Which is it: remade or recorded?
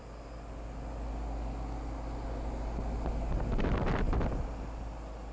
recorded